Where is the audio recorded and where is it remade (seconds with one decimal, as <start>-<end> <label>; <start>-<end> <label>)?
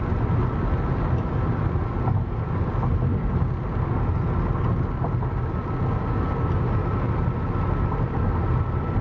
0.0-9.0 recorded